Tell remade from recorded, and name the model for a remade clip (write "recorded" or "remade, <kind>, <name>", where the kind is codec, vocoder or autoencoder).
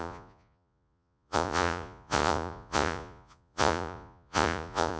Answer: remade, vocoder, Vocos